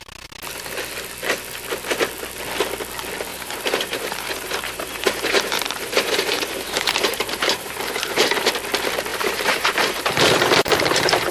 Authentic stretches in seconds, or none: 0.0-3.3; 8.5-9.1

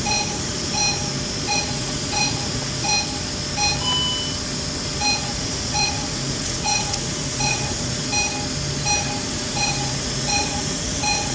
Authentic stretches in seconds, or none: 0.8-1.5; 2.9-5.2; 8.1-9.3

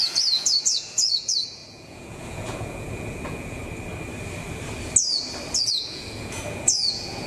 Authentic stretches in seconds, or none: 3.6-5.5

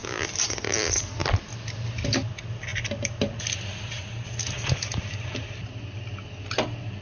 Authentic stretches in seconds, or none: 0.0-7.0